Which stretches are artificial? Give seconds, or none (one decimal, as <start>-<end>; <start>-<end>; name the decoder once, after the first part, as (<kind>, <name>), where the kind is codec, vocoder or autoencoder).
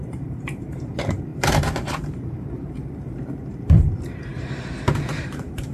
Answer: 0.0-4.3 (vocoder, BigVGAN v2); 5.1-5.7